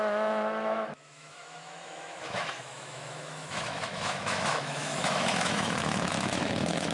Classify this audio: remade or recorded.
remade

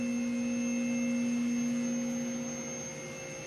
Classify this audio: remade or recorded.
recorded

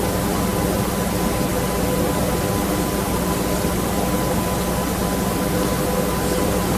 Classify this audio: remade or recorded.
recorded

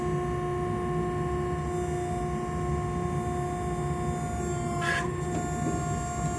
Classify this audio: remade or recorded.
recorded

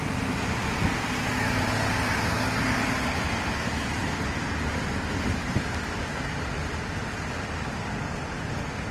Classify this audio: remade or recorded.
recorded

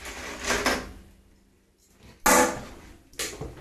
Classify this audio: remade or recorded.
recorded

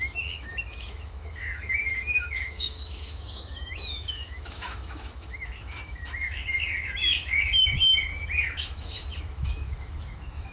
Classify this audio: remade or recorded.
remade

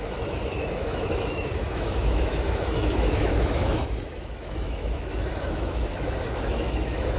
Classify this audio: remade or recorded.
remade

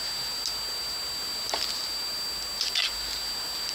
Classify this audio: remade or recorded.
recorded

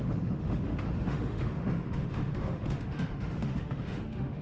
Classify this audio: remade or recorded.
remade